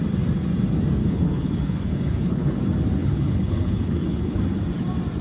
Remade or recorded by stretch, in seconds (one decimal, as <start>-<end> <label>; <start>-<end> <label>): 0.0-1.0 recorded; 1.0-2.6 remade; 2.6-3.0 recorded; 3.0-4.4 remade; 4.4-5.2 recorded